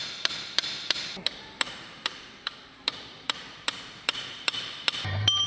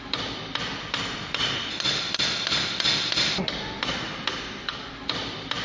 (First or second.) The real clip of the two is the second